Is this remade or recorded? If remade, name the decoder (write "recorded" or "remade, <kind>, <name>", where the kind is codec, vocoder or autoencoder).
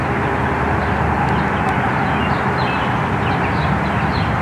recorded